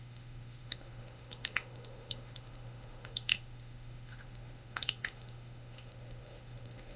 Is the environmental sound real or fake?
fake